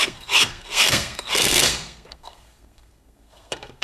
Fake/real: fake